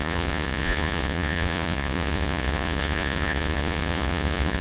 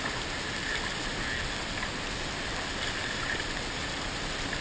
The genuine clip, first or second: second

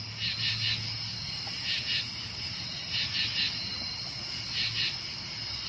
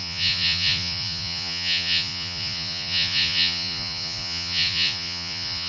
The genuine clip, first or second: first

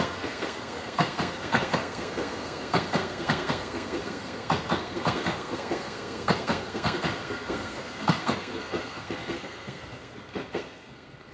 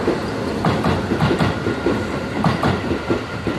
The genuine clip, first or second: second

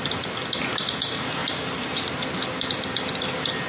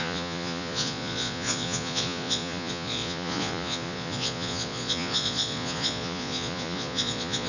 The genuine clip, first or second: first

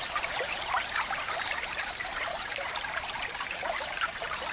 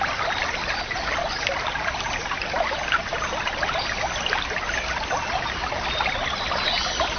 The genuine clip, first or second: second